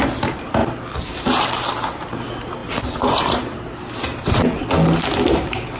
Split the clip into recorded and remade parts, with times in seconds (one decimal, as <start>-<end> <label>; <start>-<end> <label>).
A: 0.0-5.8 recorded